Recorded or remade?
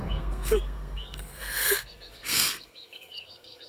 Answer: remade